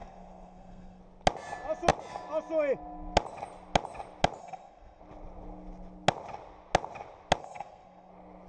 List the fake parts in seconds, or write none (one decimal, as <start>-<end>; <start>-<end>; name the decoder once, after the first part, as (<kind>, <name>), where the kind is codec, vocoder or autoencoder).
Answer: 0.0-1.0 (codec, SNAC); 4.4-5.0; 7.4-8.1